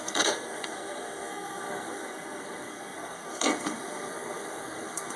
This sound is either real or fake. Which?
fake